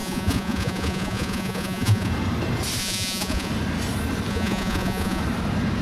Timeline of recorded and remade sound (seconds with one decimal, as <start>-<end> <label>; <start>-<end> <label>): 0.0-2.1 remade; 2.1-2.8 recorded; 2.8-3.5 remade; 3.5-4.3 recorded; 4.3-5.2 remade; 5.2-5.8 recorded